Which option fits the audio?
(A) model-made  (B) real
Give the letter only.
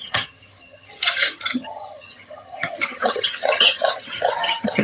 A